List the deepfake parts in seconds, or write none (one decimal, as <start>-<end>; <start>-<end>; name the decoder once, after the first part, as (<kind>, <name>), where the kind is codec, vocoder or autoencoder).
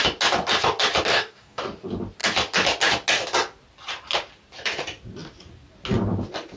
1.1-1.6 (codec, DAC)